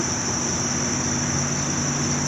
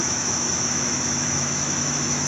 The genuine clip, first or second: first